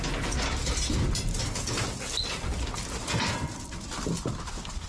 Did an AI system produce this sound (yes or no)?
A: no